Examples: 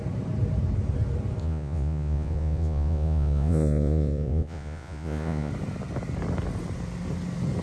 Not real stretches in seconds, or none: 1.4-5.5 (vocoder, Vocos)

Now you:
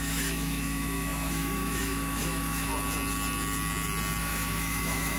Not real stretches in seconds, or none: 0.0-2.7 (autoencoder, DAC-VAE); 4.2-5.2

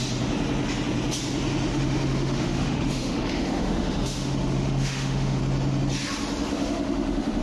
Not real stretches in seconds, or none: 1.7-5.4 (autoencoder, DAC-VAE); 6.5-7.4

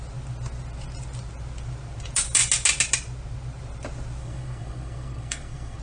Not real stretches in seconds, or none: 4.2-5.8 (codec, SNAC)

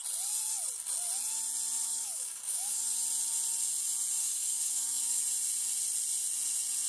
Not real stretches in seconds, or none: 1.8-2.8 (codec, DAC); 4.2-5.2

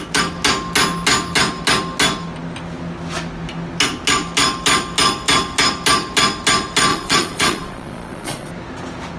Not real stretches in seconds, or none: 6.9-8.5 (vocoder, Vocos)

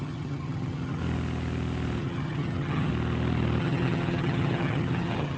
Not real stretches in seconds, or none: 0.0-1.0 (vocoder, HiFi-GAN); 2.0-2.9; 3.6-5.4

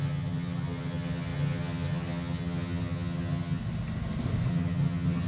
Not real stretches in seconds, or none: 0.0-3.6 (vocoder, HiFi-GAN); 4.5-5.3